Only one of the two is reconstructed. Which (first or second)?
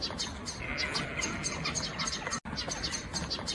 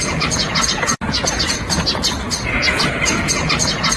second